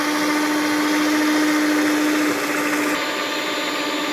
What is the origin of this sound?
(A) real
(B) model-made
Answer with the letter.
A